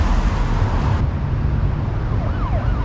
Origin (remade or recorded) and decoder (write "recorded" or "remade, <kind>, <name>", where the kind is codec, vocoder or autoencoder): recorded